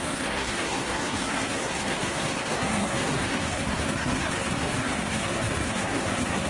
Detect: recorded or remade remade